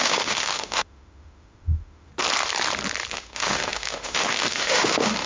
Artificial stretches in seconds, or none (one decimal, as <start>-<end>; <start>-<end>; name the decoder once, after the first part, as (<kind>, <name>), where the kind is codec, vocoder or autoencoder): 0.0-2.1 (autoencoder, DAC-VAE); 3.1-5.3